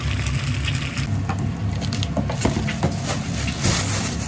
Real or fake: real